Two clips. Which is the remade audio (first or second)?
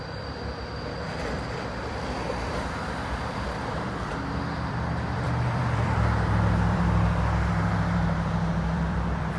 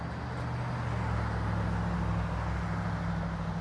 first